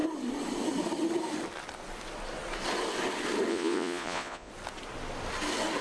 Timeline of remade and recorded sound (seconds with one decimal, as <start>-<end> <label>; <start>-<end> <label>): 0.0-3.5 recorded; 3.5-4.5 remade; 4.5-5.8 recorded